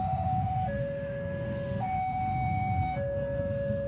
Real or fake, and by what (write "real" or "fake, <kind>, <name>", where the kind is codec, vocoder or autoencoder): fake, codec, SNAC